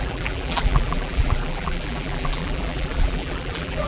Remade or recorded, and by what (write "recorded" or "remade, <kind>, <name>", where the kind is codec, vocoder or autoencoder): remade, vocoder, BigVGAN v2